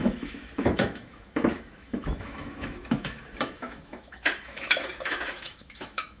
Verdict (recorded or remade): remade